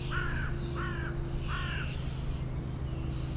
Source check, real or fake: real